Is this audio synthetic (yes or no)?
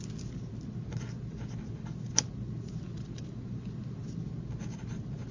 no